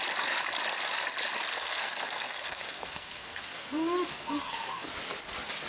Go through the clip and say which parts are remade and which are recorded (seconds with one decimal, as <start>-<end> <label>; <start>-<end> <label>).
0.0-1.5 recorded; 1.5-4.9 remade; 4.9-5.7 recorded